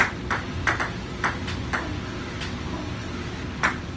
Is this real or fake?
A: real